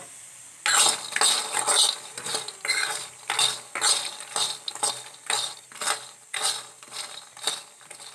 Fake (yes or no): no